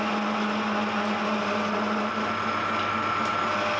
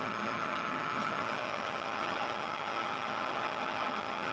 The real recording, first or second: first